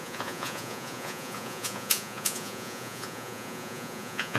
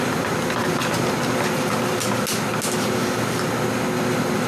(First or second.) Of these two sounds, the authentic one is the second